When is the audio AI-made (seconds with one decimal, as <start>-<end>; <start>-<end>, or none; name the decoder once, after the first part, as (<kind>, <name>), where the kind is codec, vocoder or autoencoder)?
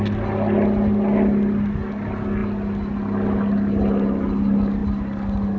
none